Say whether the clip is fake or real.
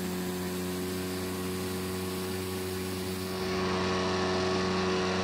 real